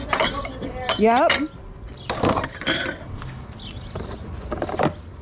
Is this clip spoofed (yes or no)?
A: no